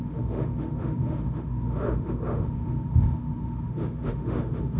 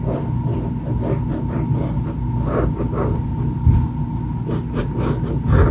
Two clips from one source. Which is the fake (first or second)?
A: first